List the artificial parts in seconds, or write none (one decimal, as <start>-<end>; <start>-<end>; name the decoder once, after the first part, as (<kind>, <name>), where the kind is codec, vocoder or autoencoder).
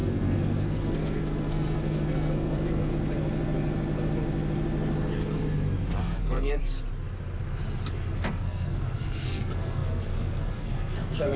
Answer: 0.0-2.9 (codec, SNAC); 6.0-6.6; 7.9-11.4